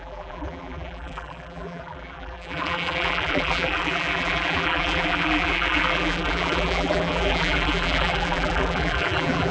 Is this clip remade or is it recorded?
remade